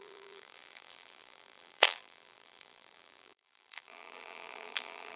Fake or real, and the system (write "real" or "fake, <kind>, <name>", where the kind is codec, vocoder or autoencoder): fake, vocoder, BigVGAN v2